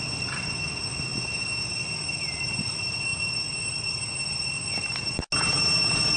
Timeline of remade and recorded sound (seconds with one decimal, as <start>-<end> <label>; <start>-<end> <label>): 0.0-6.2 recorded